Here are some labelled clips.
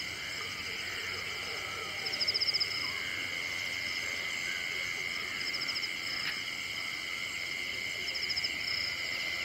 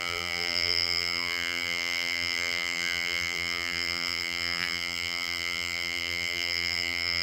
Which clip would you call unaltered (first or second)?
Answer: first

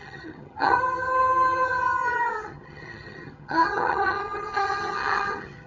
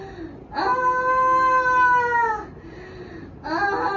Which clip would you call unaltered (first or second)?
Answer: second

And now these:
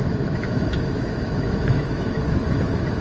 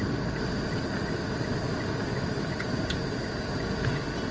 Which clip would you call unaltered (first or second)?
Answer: second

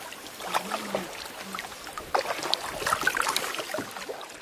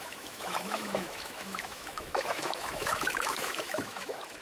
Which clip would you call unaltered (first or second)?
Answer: first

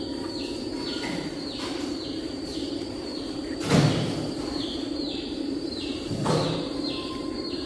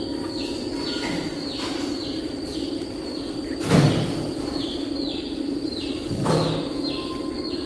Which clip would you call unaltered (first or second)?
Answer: second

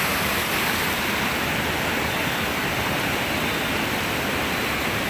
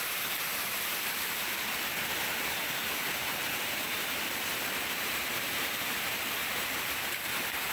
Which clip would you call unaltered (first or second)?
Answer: first